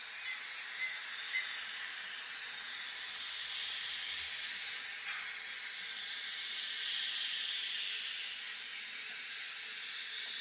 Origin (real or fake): real